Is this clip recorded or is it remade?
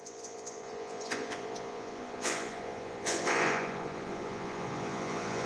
remade